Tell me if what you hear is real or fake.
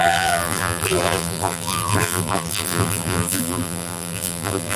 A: fake